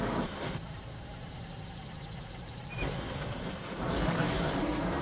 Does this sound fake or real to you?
fake